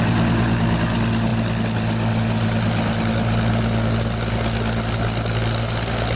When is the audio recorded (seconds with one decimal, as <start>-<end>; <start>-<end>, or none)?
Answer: 0.0-6.2